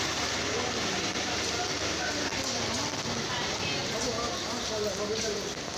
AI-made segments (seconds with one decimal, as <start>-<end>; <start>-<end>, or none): none